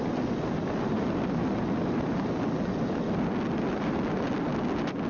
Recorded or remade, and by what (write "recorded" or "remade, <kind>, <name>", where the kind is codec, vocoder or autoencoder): recorded